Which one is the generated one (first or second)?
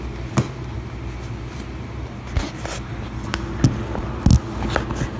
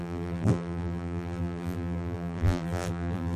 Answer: second